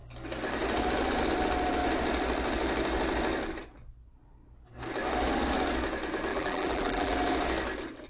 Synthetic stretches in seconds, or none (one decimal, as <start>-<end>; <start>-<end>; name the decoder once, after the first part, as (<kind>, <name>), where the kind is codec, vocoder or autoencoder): 6.3-7.1 (vocoder, BigVGAN v2)